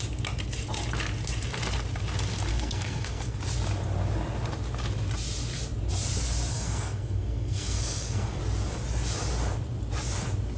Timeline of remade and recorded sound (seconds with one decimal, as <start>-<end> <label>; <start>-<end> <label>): 0.0-2.5 recorded; 2.5-3.4 remade; 3.4-6.5 recorded; 6.5-8.4 remade; 8.4-10.6 recorded